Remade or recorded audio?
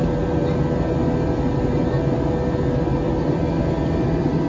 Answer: recorded